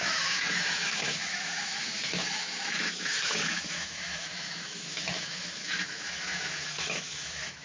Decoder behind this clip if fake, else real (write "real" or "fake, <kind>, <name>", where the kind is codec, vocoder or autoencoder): fake, autoencoder, DAC-VAE